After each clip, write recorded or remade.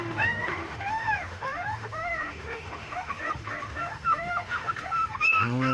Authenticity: remade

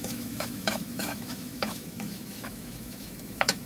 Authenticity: remade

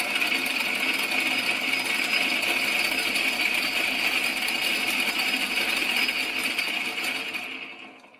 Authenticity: recorded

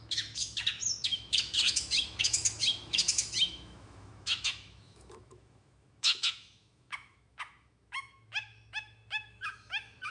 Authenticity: remade